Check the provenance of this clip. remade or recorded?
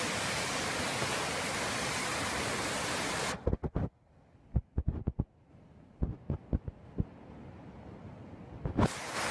recorded